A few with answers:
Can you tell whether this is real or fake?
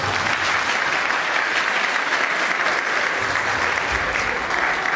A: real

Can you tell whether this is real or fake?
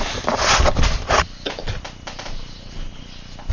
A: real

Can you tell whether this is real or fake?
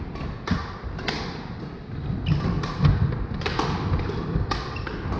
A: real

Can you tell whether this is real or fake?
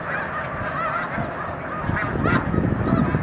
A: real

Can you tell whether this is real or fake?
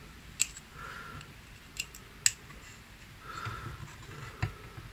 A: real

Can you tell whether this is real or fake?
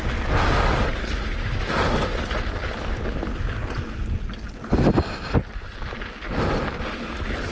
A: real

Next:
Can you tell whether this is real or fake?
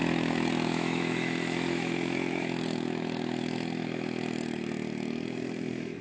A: fake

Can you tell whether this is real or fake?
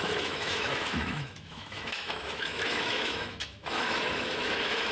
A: fake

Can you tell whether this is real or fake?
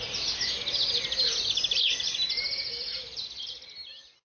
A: real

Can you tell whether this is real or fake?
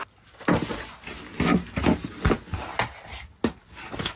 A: real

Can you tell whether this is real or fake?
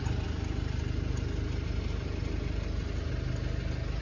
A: real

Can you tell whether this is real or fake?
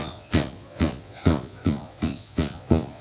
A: fake